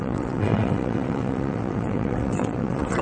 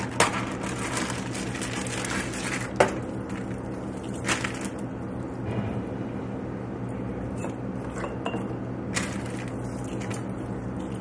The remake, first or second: first